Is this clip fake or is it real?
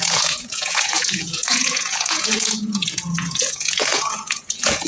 fake